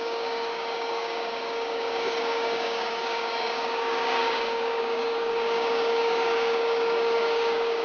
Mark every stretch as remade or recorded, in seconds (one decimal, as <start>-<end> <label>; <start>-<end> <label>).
0.0-7.8 remade